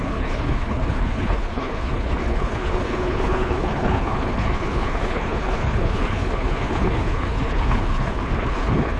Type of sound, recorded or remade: remade